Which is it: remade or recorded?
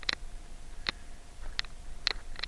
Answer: recorded